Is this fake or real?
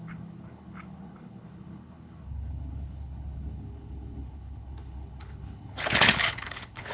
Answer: fake